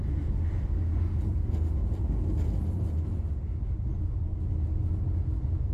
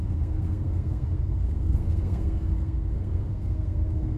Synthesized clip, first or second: second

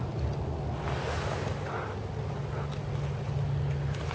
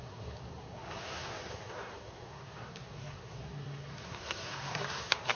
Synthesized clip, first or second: second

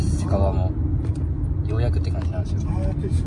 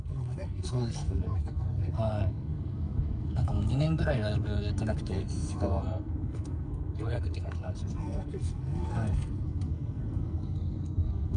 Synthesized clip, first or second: second